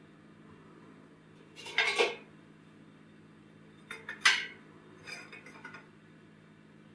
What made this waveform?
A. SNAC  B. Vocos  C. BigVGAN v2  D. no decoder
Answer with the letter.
D